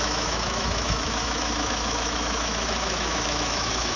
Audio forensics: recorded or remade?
remade